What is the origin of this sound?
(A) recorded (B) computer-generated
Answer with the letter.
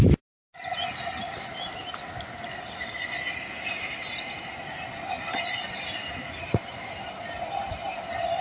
A